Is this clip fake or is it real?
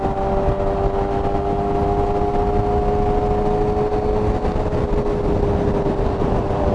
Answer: real